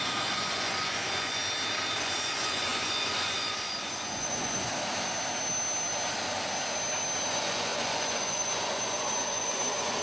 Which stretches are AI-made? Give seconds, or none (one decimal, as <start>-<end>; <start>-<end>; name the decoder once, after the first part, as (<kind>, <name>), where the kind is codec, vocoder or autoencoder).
0.0-1.4 (vocoder, Vocos); 2.0-4.7; 7.3-10.0